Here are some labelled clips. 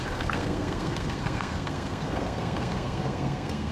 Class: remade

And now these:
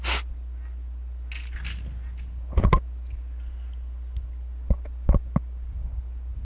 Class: recorded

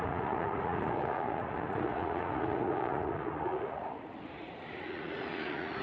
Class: remade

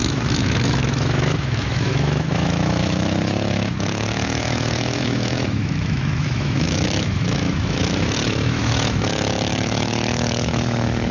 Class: remade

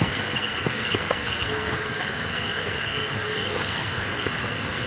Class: remade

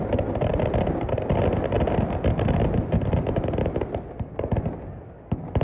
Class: recorded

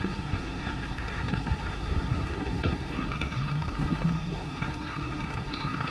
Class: remade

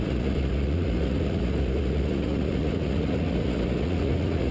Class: remade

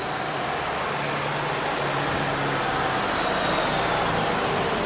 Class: recorded